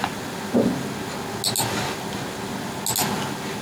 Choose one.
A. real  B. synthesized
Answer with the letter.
A